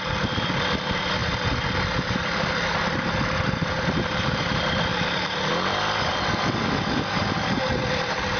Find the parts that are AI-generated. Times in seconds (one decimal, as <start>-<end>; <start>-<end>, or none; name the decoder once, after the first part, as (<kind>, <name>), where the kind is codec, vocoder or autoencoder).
none